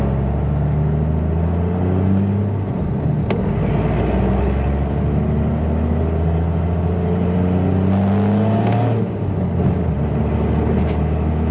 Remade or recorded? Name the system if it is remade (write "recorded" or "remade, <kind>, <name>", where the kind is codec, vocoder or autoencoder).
recorded